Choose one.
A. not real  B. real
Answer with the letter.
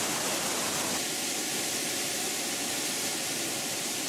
B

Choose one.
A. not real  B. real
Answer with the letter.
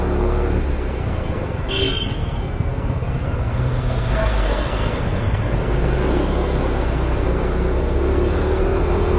A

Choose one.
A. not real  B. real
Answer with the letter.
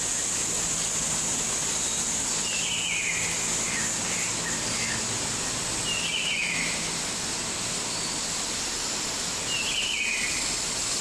B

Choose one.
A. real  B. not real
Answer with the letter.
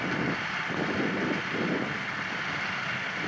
A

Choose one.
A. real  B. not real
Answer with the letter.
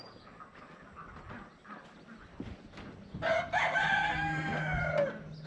A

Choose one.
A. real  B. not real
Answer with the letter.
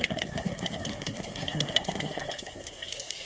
B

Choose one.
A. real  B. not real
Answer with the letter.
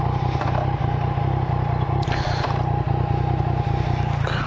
A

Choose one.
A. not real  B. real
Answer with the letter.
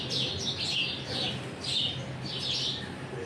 B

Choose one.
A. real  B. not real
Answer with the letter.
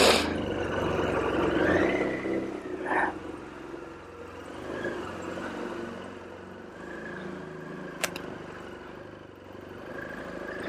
A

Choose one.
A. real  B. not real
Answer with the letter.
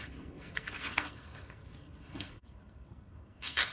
B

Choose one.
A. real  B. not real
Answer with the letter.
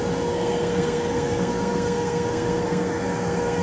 B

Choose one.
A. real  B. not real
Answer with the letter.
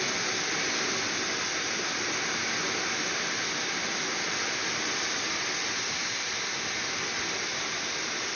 A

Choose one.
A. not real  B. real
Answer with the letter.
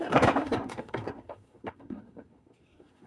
A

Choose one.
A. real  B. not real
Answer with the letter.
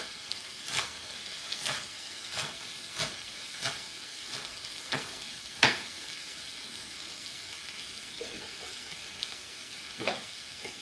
B